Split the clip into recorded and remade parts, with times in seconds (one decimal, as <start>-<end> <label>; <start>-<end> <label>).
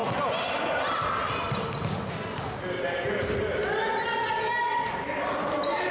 0.0-5.9 recorded